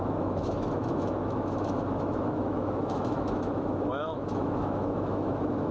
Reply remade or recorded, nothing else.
remade